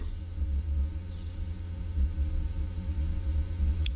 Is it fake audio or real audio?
fake